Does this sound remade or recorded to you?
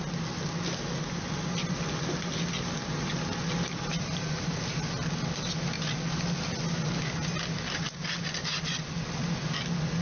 recorded